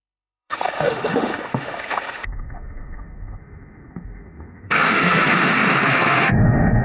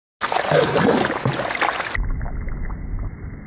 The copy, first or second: first